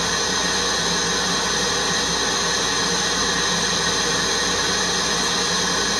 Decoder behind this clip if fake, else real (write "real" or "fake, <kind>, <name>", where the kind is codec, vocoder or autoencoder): real